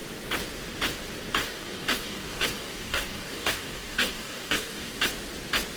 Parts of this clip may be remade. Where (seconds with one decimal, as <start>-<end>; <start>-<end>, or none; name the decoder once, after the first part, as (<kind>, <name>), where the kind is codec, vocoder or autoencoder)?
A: 1.4-4.9 (codec, DAC)